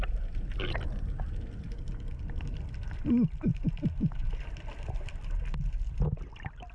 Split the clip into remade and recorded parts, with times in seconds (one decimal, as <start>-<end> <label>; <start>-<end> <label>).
0.0-6.7 recorded